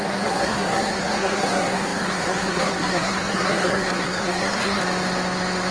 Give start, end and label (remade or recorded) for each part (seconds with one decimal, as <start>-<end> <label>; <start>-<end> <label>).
0.0-4.8 remade; 4.8-5.7 recorded

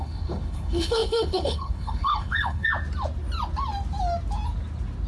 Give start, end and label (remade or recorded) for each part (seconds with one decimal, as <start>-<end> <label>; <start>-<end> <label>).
0.0-2.7 remade; 2.7-5.1 recorded

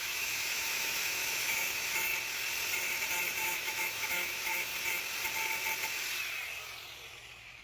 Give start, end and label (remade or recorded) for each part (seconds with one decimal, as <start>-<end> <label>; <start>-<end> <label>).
0.0-2.1 remade; 2.1-3.3 recorded; 3.3-4.7 remade; 4.7-7.6 recorded